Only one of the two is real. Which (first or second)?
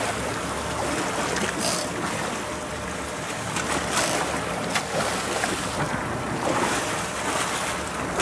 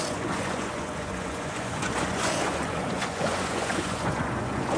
first